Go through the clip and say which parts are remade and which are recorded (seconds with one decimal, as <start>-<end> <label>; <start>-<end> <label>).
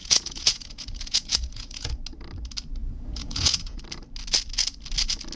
0.0-1.9 remade; 1.9-2.8 recorded; 2.8-3.8 remade; 3.8-5.4 recorded